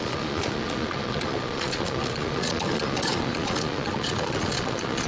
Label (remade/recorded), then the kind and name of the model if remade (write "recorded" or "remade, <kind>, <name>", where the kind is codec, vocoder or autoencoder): remade, vocoder, Vocos